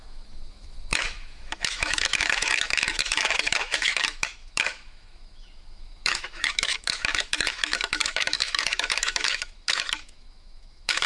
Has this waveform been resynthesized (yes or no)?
yes